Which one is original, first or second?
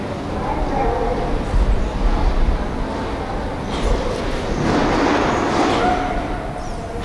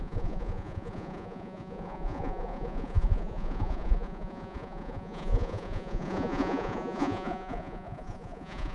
first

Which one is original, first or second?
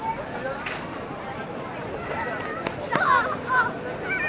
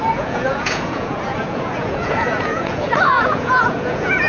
first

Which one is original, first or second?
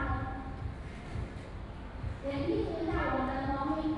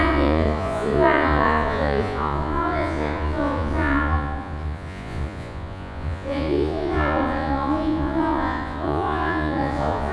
first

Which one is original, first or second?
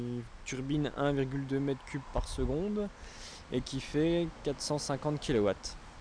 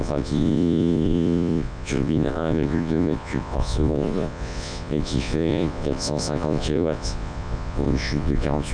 first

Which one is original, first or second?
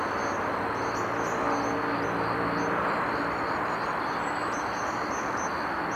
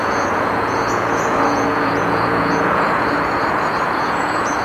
first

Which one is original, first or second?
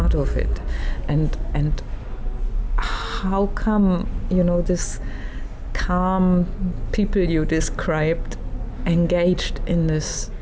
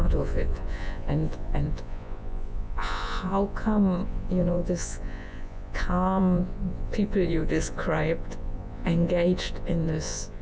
first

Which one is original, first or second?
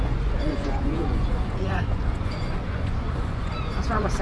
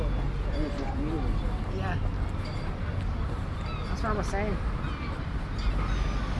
second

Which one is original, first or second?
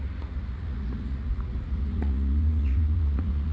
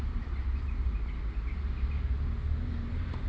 second